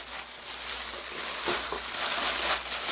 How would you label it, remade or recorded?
recorded